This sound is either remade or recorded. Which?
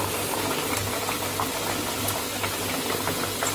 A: recorded